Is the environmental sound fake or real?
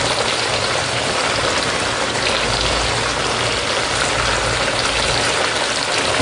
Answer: real